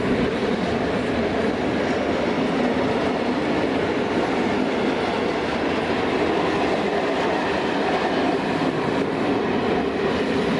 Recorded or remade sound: recorded